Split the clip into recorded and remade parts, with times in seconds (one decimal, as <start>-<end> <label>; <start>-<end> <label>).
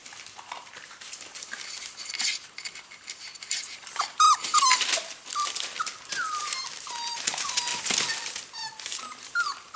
0.0-4.0 remade; 4.0-5.3 recorded; 5.3-6.4 remade; 6.4-9.8 recorded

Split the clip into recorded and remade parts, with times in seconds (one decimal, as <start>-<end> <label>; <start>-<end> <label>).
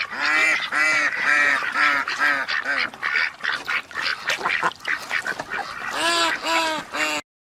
0.0-0.4 recorded; 0.4-2.2 remade; 2.2-7.4 recorded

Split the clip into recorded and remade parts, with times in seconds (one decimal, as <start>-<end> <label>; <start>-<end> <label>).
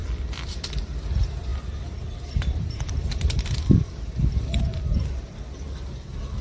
0.0-6.4 remade